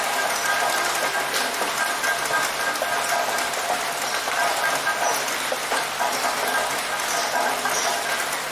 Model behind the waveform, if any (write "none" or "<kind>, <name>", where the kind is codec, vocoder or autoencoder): none